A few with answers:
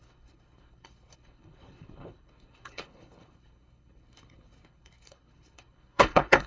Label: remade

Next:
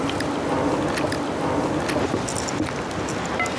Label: recorded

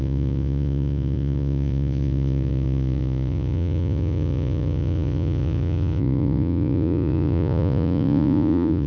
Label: remade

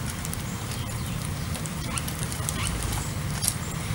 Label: recorded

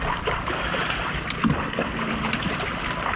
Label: remade